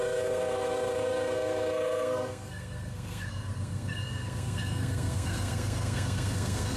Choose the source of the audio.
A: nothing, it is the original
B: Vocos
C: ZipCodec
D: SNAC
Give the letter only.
D